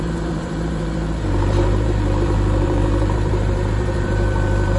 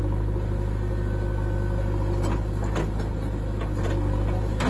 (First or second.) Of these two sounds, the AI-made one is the first